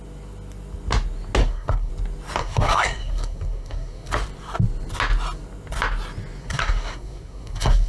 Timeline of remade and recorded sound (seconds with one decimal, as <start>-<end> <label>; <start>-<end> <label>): 0.0-1.4 recorded; 1.4-1.9 remade; 1.9-2.4 recorded; 2.4-4.1 remade; 4.1-6.4 recorded; 6.4-7.9 remade